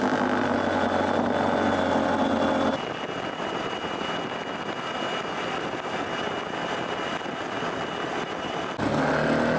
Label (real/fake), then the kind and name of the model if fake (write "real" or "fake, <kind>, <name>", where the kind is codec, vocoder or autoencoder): real